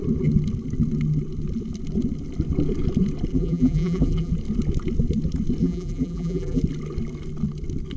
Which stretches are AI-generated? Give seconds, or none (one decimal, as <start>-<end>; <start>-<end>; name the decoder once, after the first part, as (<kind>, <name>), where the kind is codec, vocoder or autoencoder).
3.3-4.3 (vocoder, BigVGAN v2); 5.6-6.6